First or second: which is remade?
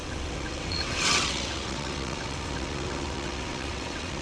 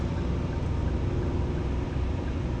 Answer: first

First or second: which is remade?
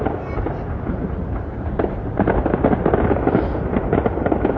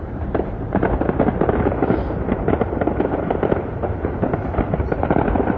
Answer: second